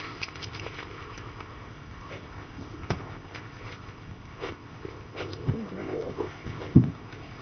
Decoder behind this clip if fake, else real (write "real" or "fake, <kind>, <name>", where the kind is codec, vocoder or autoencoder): fake, codec, ZipCodec